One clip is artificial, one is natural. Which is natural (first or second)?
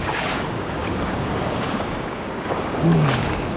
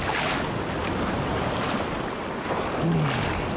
second